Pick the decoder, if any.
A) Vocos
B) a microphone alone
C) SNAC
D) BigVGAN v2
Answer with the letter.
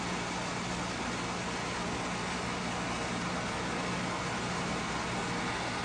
B